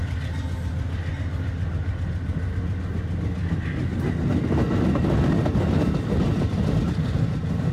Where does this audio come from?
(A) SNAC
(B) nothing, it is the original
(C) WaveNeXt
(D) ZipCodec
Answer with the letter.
B